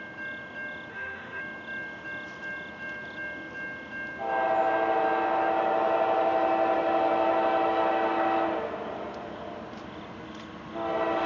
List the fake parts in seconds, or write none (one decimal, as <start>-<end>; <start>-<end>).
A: 0.9-1.4